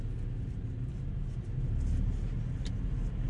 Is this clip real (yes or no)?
yes